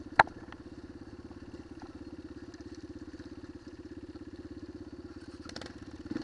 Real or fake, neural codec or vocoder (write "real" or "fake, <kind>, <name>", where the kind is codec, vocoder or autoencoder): real